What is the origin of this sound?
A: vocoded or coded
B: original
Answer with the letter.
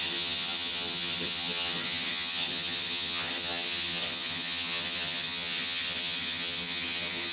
A